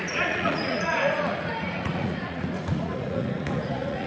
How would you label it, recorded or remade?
remade